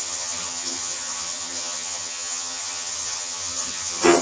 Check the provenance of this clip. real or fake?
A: fake